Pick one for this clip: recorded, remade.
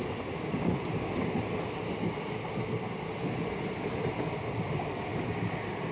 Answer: recorded